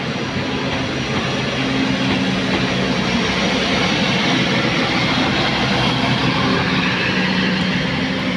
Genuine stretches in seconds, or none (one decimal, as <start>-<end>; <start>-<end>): 0.0-8.4

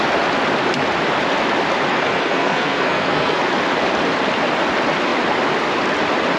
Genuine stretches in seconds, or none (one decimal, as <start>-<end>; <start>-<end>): 0.0-1.9; 3.4-6.4

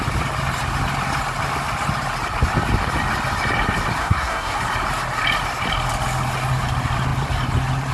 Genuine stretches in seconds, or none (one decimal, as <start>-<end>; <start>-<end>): 0.0-4.0; 4.6-7.9

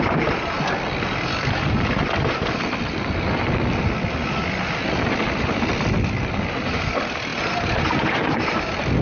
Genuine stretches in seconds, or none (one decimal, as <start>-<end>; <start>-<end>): 0.0-9.0

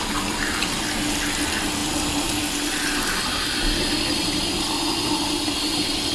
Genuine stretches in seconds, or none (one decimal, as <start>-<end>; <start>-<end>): 0.0-6.1

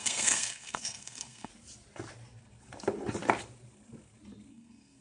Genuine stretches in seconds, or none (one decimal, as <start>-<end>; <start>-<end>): 1.5-4.5